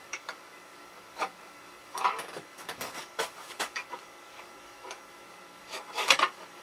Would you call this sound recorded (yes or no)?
no